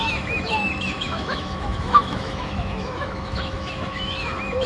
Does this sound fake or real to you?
fake